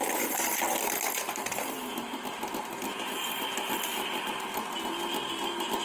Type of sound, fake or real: real